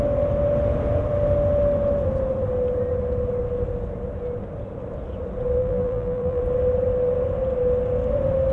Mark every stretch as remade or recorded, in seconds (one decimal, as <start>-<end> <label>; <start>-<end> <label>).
0.0-5.6 recorded; 5.6-6.4 remade; 6.4-8.5 recorded